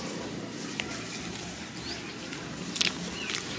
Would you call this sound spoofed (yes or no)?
no